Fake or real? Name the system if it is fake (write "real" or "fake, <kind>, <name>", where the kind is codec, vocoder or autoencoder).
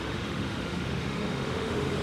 fake, autoencoder, DAC-VAE